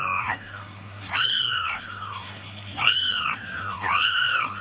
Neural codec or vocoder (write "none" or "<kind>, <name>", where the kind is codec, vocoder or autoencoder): codec, SNAC